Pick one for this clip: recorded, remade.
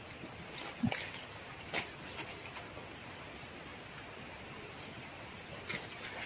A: recorded